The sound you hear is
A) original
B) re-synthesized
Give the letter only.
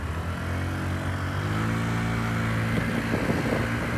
A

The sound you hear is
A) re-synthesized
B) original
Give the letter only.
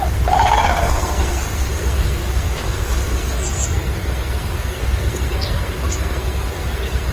A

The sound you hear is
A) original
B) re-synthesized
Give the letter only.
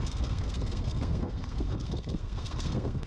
B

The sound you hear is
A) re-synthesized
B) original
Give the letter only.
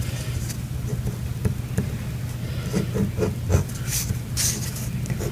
B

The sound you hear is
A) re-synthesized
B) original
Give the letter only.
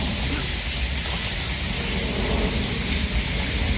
B